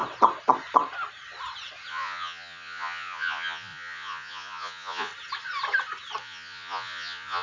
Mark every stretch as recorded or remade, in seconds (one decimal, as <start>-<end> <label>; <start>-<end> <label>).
0.0-1.9 recorded; 1.9-5.1 remade; 5.1-6.2 recorded; 6.2-7.4 remade